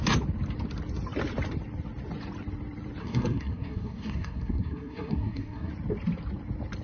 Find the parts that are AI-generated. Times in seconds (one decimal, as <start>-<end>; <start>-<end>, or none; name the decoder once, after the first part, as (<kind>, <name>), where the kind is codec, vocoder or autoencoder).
3.0-5.7 (codec, SNAC)

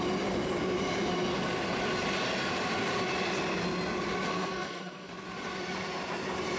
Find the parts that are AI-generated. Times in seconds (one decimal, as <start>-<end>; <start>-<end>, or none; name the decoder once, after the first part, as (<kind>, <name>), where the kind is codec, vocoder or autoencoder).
4.3-5.1 (codec, SNAC)

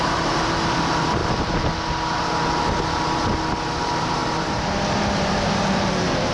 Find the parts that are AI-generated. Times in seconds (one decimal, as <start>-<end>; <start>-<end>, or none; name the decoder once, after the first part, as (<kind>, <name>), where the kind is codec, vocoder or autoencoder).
0.0-1.2 (vocoder, BigVGAN v2); 3.8-6.3